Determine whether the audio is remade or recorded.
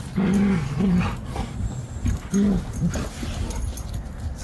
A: recorded